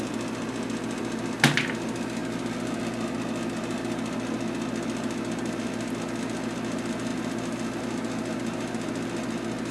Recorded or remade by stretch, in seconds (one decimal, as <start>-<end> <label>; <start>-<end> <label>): 0.0-9.7 recorded